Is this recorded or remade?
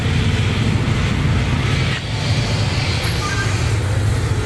recorded